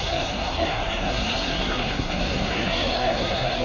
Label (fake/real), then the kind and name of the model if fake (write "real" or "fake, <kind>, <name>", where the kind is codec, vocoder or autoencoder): fake, codec, SNAC